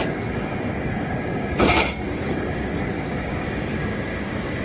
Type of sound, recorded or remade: remade